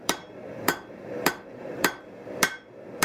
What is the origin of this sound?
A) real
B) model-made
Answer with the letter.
B